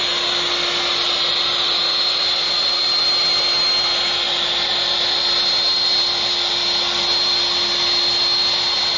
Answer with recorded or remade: recorded